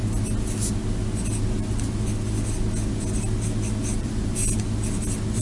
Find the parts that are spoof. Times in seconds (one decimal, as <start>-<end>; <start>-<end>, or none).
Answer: 3.9-4.6